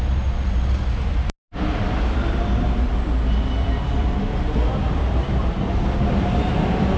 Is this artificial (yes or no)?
no